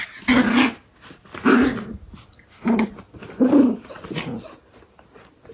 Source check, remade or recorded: recorded